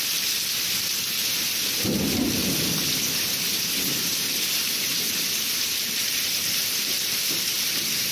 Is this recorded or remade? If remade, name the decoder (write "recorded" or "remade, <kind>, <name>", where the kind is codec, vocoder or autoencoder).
recorded